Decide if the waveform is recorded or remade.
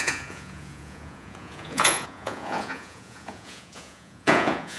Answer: remade